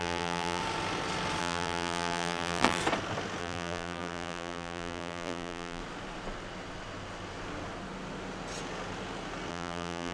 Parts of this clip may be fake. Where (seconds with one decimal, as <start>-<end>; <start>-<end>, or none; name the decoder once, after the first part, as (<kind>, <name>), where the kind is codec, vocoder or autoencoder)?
0.0-0.6 (vocoder, BigVGAN v2); 1.4-2.8; 3.4-5.8; 9.5-10.1

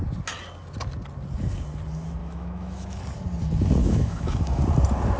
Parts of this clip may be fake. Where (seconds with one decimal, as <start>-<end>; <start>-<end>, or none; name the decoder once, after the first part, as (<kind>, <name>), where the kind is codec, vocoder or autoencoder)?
2.2-3.0 (autoencoder, DAC-VAE); 3.8-4.6

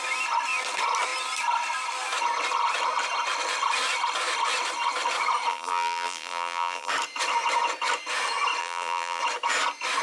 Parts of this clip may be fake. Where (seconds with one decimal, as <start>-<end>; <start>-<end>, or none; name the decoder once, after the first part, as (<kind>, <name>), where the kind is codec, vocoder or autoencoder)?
5.5-6.9 (vocoder, BigVGAN v2); 8.6-9.2

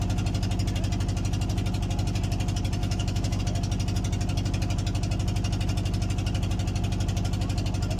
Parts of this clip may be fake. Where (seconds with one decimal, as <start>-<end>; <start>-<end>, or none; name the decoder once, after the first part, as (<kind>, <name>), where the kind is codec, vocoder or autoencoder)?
2.8-3.4 (autoencoder, DAC-VAE)

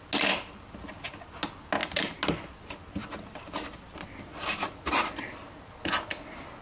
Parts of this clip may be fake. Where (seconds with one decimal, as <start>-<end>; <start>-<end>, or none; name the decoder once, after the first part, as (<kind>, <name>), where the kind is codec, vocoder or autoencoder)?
none

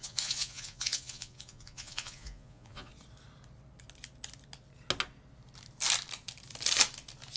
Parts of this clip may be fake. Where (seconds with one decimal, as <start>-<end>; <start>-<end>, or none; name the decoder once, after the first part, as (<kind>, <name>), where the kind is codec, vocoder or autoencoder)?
0.0-2.9 (vocoder, Vocos)

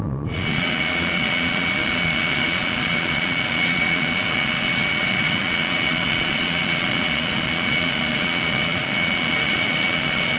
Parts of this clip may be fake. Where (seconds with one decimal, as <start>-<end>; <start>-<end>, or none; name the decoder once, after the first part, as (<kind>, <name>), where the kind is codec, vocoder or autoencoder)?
0.0-10.4 (vocoder, Vocos)

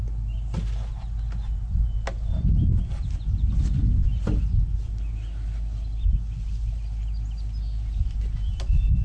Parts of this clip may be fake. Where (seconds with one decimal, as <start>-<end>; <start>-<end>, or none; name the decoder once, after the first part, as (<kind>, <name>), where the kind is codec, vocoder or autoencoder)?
none